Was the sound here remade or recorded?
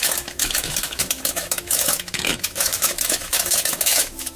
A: remade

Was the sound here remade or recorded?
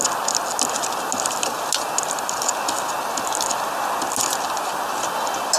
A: recorded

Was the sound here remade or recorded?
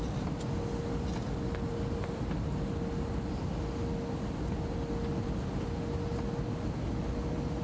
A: recorded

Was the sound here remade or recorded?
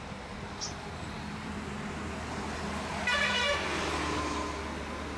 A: recorded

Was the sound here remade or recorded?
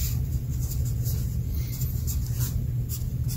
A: recorded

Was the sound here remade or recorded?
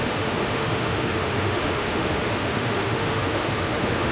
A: remade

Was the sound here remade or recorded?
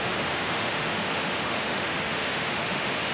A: remade